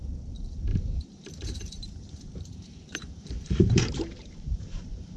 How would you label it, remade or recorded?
remade